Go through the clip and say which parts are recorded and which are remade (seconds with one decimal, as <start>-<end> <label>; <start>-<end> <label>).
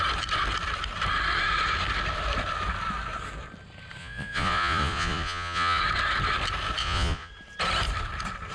0.0-4.0 recorded; 4.0-5.8 remade; 5.8-6.8 recorded; 6.8-7.3 remade; 7.3-8.5 recorded